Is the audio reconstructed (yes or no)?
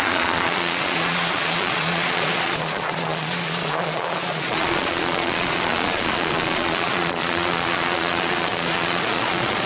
yes